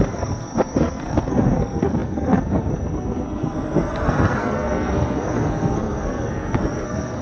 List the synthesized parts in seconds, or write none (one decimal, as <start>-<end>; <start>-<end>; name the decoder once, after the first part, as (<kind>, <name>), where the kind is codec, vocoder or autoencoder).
0.0-7.2 (codec, SNAC)